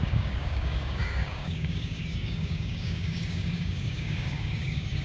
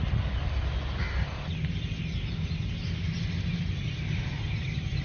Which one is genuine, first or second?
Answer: second